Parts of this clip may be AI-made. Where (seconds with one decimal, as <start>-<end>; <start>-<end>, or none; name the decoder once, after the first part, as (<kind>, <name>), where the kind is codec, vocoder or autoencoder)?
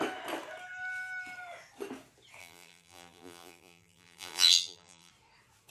2.4-5.1 (vocoder, BigVGAN v2)